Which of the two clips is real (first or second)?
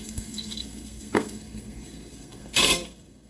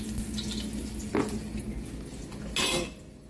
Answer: second